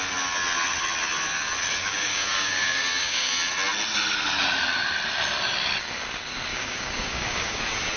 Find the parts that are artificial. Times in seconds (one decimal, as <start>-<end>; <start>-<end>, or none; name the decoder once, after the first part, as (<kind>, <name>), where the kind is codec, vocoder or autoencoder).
1.8-3.3 (codec, DAC); 6.5-7.6